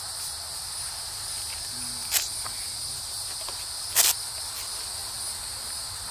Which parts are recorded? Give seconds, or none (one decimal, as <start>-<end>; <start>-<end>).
0.0-6.1